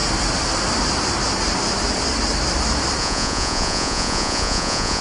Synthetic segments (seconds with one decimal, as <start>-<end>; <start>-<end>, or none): 3.0-5.0